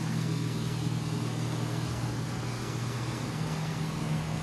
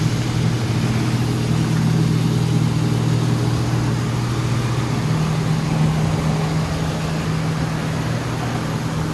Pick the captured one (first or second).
second